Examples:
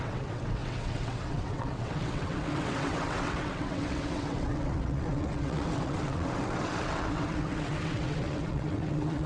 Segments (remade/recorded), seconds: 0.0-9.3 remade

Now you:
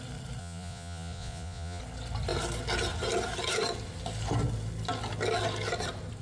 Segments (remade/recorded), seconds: 0.0-0.4 recorded; 0.4-1.8 remade; 1.8-6.2 recorded

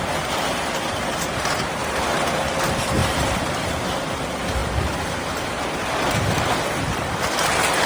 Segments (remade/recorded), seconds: 0.0-3.0 recorded; 3.0-3.7 remade; 3.7-7.9 recorded

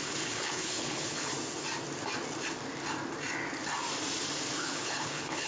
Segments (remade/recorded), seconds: 0.0-1.3 remade; 1.3-4.6 recorded; 4.6-5.5 remade